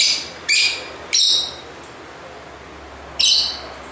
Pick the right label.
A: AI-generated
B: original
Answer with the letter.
B